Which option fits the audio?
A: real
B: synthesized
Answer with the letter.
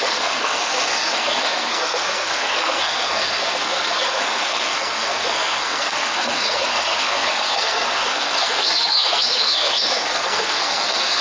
B